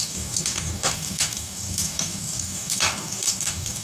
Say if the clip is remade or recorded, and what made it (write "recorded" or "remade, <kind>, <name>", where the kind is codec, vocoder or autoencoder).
remade, codec, DAC